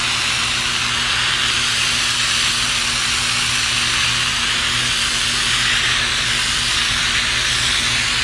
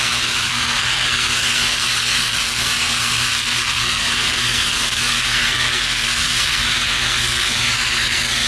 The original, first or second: first